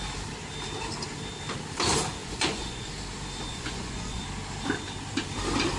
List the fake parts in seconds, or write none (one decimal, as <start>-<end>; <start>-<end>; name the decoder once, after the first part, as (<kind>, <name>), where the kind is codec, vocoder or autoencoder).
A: 2.2-2.9 (vocoder, Vocos); 3.5-4.2